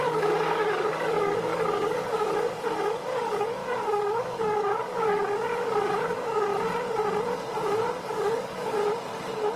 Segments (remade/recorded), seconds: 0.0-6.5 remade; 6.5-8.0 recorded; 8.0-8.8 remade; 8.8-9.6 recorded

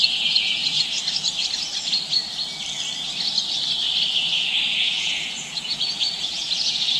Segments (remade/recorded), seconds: 0.0-0.6 remade; 0.6-4.8 recorded; 4.8-7.0 remade

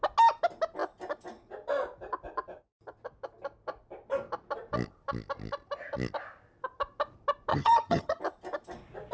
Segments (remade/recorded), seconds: 0.0-7.5 recorded; 7.5-8.2 remade; 8.2-9.1 recorded

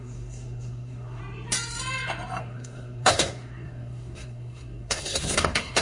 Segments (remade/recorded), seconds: 0.0-1.2 remade; 1.2-2.4 recorded; 2.4-5.8 remade

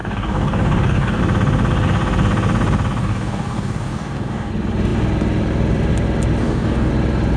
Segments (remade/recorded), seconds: 0.0-1.2 remade; 1.2-3.0 recorded; 3.0-4.5 remade; 4.5-6.4 recorded; 6.4-6.9 remade; 6.9-7.4 recorded

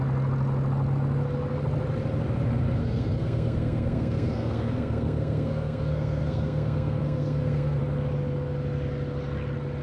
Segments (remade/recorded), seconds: 0.0-2.8 recorded; 2.8-7.8 remade; 7.8-9.8 recorded